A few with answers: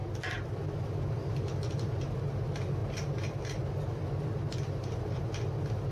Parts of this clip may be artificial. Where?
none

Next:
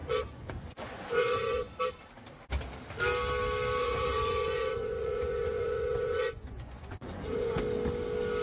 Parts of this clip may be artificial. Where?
0.0-1.8 (vocoder, Vocos); 3.8-7.6

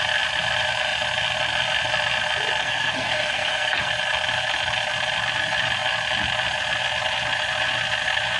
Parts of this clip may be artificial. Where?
2.6-3.9 (codec, SNAC)

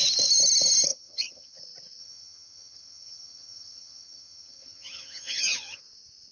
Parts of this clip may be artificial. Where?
0.9-1.6 (vocoder, HiFi-GAN); 2.0-5.8